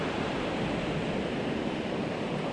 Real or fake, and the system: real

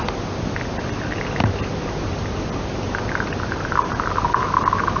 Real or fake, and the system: real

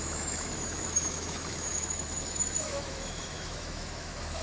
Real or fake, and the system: fake, autoencoder, DAC-VAE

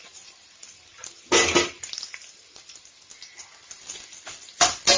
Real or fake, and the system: real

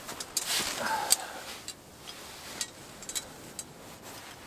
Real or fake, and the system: real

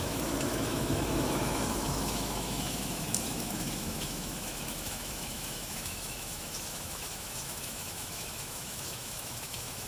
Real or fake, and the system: fake, autoencoder, DAC-VAE